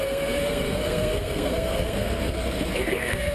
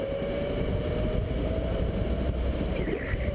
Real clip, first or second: second